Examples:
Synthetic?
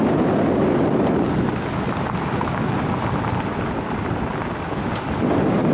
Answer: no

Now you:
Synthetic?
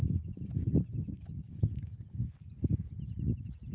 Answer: no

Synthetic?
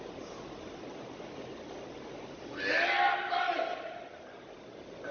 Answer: no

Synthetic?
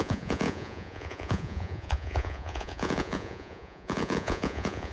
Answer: yes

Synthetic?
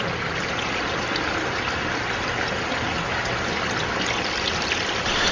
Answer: no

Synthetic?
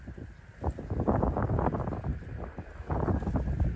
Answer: no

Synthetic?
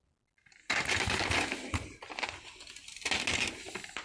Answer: no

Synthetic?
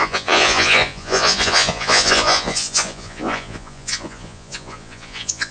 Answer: yes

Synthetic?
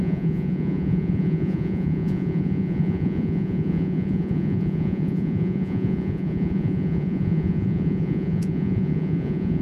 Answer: yes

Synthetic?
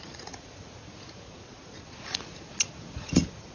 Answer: yes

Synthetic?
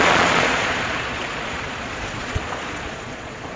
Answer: yes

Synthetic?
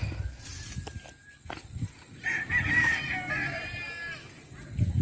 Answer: no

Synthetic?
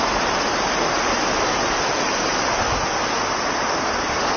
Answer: no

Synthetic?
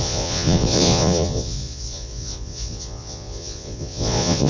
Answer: yes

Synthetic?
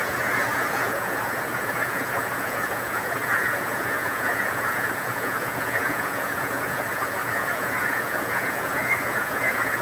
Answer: yes